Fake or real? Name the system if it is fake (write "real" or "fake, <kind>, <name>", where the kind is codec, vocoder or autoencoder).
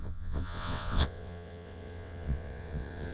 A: fake, vocoder, WaveNeXt